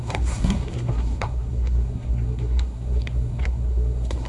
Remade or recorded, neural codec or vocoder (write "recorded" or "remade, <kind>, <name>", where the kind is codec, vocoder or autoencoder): remade, codec, SNAC